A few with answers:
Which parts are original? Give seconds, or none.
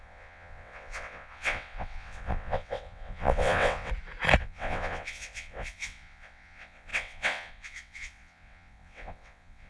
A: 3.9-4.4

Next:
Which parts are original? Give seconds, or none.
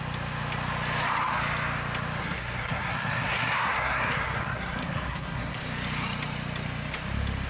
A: 0.0-2.2; 5.6-7.5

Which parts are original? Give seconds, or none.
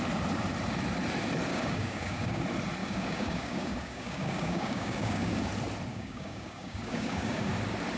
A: 0.0-1.5; 2.4-2.8; 5.5-5.9; 7.5-8.0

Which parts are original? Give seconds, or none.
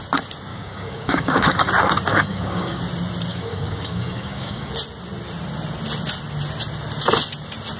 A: 0.0-0.5; 1.7-2.1; 2.8-3.3; 4.7-7.8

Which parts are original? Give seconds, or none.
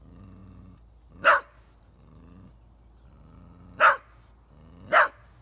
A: 0.0-5.4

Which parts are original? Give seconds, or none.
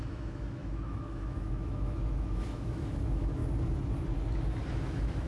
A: 3.4-4.7